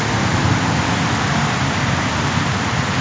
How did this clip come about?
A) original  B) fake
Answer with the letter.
A